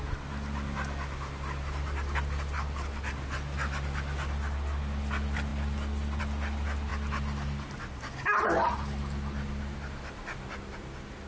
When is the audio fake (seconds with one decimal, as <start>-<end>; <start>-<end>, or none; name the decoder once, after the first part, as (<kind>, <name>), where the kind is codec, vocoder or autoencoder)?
none